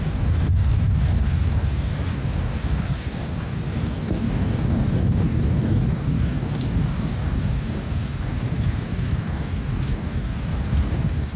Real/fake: fake